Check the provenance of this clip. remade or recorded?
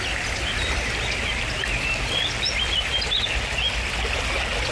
recorded